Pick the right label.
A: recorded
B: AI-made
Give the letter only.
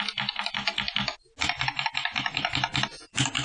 A